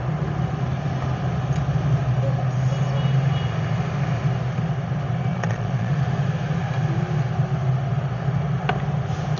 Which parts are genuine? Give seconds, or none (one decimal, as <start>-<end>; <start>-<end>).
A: 0.0-5.3; 5.9-9.4

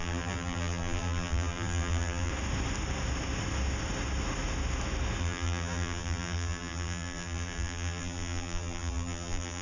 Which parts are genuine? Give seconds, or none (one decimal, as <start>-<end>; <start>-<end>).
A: 2.3-5.2

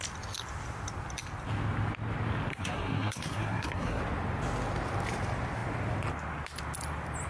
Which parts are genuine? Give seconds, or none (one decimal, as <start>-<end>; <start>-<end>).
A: 0.0-2.5; 4.0-7.3

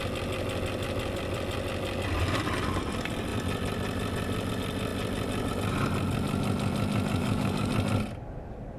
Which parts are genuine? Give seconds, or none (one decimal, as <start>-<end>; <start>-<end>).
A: 0.0-7.2; 7.7-8.8

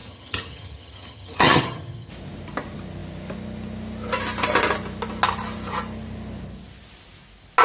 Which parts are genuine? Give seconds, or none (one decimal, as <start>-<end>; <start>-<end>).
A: 2.1-7.6

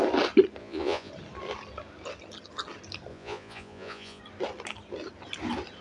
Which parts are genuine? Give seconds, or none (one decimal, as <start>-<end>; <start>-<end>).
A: 0.0-0.6; 1.1-3.1; 4.2-5.8